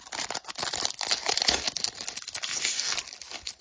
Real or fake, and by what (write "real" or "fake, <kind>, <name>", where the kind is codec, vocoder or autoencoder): real